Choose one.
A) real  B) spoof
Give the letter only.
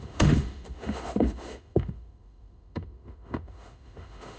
B